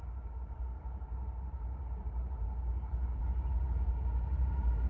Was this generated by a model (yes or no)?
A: yes